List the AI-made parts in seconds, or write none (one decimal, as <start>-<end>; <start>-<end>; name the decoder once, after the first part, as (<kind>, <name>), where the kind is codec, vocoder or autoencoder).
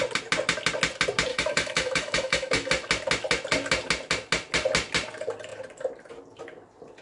1.3-2.7 (autoencoder, DAC-VAE)